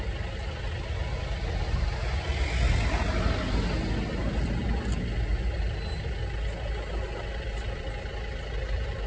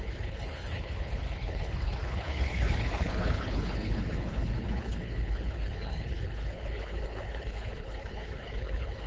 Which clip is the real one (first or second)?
first